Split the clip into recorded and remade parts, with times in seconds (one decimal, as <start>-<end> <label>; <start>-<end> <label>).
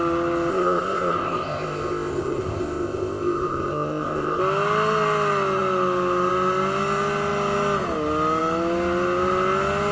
0.0-0.5 recorded; 0.5-4.4 remade; 4.4-9.9 recorded